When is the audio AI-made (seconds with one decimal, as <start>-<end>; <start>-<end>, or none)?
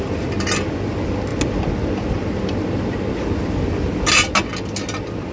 none